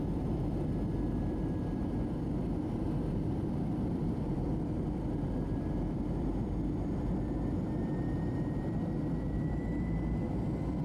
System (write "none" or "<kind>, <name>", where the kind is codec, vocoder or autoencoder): vocoder, BigVGAN v2